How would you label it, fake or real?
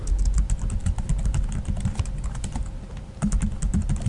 real